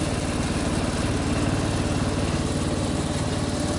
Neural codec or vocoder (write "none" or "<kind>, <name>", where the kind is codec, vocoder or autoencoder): none